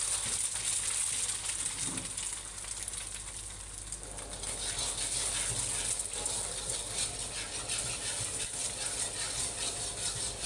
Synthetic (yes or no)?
no